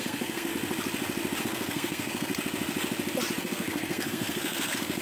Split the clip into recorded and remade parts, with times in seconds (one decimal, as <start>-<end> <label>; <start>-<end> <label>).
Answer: 0.0-0.5 remade; 0.5-1.4 recorded; 1.4-2.3 remade; 2.3-3.4 recorded; 3.4-5.0 remade